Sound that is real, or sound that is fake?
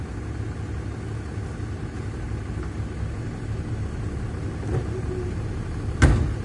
real